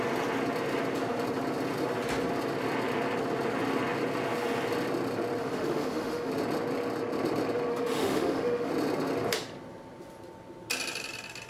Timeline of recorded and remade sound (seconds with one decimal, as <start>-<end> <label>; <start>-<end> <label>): 0.0-5.4 recorded; 5.4-6.3 remade; 6.3-7.7 recorded; 7.7-8.7 remade; 8.7-11.5 recorded